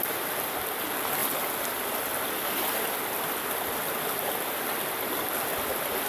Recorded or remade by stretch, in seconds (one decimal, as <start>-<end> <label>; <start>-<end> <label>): 0.0-6.1 recorded